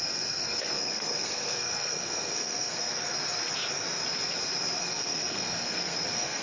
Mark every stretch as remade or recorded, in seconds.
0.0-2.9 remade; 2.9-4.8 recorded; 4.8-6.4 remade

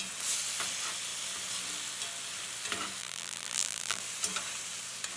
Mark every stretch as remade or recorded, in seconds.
0.0-3.0 recorded; 3.0-4.0 remade; 4.0-5.2 recorded

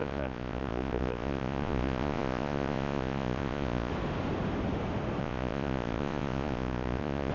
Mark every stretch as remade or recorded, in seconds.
0.0-3.9 remade; 3.9-5.2 recorded; 5.2-7.3 remade

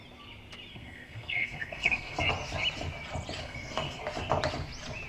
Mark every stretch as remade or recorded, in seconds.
0.0-0.7 recorded; 0.7-2.3 remade; 2.3-3.4 recorded; 3.4-4.0 remade; 4.0-5.1 recorded